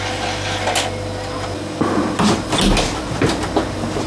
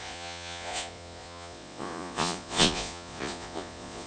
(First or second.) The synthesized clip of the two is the second